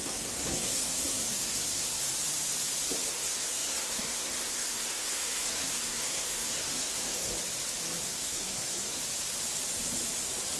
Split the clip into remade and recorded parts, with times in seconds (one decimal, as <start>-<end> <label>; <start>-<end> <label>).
0.0-2.0 remade; 2.0-3.1 recorded; 3.1-7.3 remade; 7.3-8.0 recorded; 8.0-9.0 remade; 9.0-10.6 recorded